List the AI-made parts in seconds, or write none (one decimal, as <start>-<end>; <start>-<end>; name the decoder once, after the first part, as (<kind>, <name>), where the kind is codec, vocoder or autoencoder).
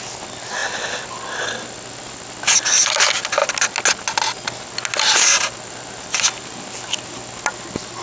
none